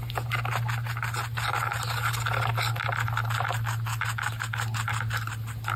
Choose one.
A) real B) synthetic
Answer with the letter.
A